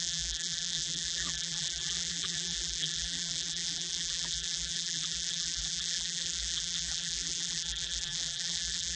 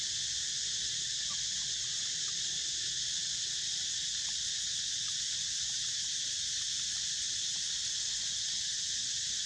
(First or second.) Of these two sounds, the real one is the second